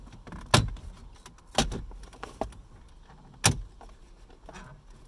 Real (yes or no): yes